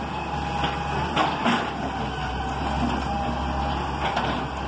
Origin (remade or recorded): recorded